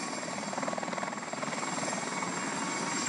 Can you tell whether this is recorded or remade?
recorded